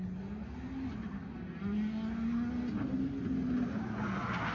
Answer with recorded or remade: recorded